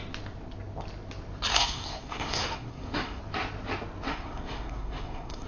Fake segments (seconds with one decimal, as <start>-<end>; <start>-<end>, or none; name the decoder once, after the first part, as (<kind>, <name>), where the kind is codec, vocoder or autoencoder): 1.5-3.2 (codec, SNAC); 4.1-5.5